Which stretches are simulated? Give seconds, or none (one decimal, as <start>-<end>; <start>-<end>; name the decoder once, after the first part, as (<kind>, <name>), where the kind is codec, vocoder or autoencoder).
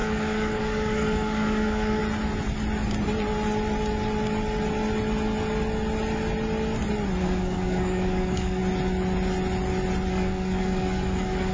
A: 0.0-2.0 (codec, DAC); 7.2-8.6; 10.1-11.5